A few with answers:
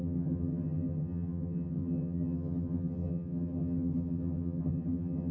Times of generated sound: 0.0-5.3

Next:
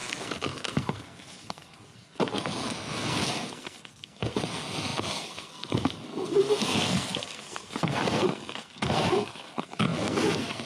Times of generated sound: 0.0-10.7

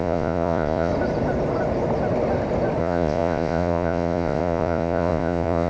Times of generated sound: 0.0-0.9; 2.8-5.7

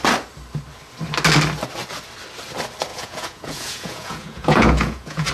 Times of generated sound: 2.9-5.3

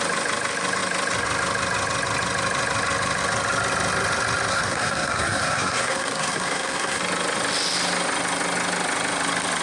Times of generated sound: 4.5-7.0